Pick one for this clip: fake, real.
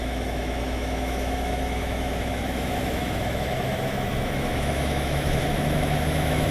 fake